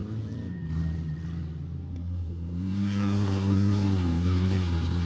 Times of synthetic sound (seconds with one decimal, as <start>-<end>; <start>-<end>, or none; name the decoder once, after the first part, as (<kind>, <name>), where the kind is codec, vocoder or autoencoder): 1.9-5.1 (codec, SNAC)